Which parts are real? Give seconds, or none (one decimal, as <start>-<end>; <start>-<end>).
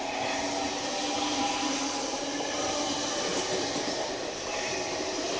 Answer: 0.0-5.4